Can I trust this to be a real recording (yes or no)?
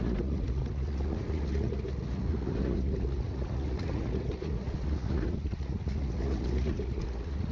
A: no